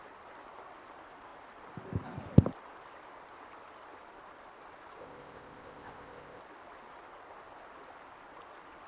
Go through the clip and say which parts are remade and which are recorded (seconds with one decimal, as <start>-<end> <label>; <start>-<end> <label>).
0.0-5.0 recorded; 5.0-6.4 remade; 6.4-8.9 recorded